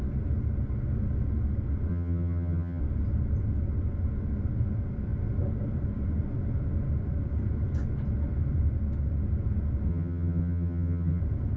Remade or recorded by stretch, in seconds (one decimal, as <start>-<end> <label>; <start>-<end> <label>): 0.0-1.9 recorded; 1.9-2.8 remade; 2.8-9.9 recorded; 9.9-11.2 remade; 11.2-11.6 recorded

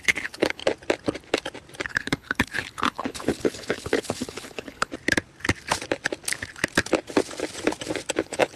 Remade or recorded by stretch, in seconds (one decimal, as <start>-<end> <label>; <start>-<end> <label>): 0.0-0.6 remade; 0.6-1.9 recorded; 1.9-4.9 remade; 4.9-8.2 recorded; 8.2-8.6 remade